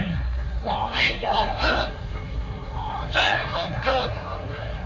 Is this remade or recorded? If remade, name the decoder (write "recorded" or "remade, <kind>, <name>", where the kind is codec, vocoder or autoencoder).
remade, codec, SNAC